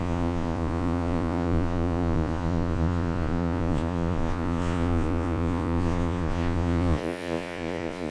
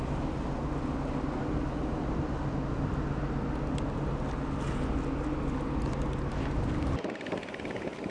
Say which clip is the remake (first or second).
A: first